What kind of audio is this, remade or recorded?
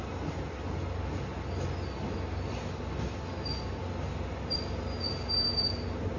recorded